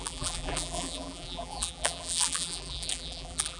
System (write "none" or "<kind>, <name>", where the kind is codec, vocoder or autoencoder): vocoder, BigVGAN v2